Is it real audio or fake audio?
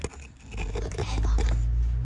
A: real